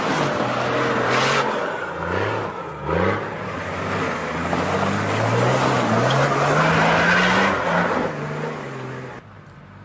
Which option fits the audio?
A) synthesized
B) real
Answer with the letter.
B